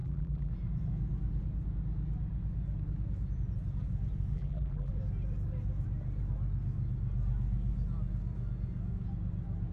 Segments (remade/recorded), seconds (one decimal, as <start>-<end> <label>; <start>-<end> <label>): 0.0-0.5 remade; 0.5-4.3 recorded; 4.3-4.9 remade; 4.9-9.7 recorded